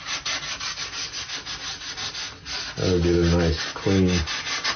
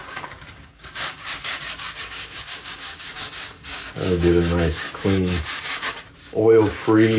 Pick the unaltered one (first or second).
first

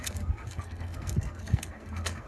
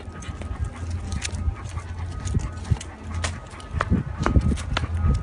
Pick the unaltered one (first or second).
second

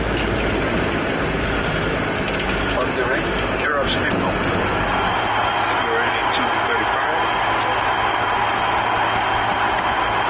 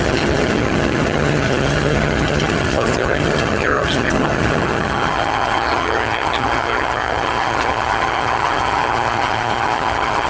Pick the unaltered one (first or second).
first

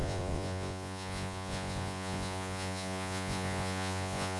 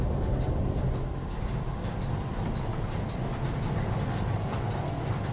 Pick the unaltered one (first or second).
second